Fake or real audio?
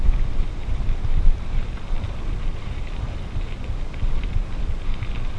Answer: real